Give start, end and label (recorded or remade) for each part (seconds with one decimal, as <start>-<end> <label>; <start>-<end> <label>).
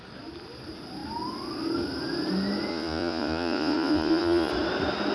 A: 0.0-2.7 recorded; 2.7-4.5 remade; 4.5-5.1 recorded